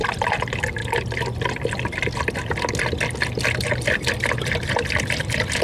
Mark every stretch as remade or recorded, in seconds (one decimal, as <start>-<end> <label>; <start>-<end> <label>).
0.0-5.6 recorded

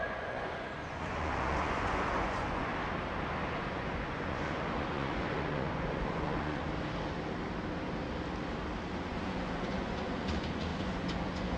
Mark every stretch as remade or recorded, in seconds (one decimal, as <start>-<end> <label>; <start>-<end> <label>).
0.0-2.7 remade; 2.7-3.6 recorded; 3.6-6.6 remade; 6.6-9.0 recorded; 9.0-11.6 remade

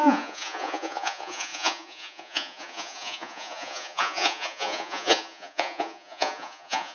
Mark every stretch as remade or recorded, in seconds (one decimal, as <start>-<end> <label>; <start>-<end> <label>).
0.0-6.9 remade